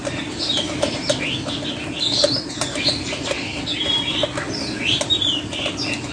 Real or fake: real